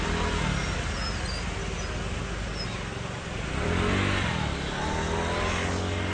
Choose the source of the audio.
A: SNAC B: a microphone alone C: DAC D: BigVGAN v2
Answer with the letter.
B